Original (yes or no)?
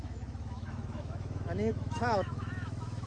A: no